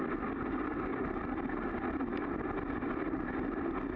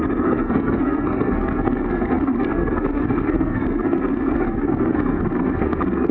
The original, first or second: first